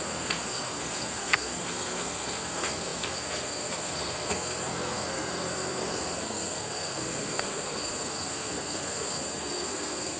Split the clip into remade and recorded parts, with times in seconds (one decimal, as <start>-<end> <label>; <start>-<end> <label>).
0.0-10.2 remade